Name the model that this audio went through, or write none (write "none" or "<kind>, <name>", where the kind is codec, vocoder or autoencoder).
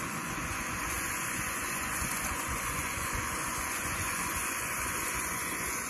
vocoder, Vocos